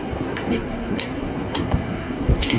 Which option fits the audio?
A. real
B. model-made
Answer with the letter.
B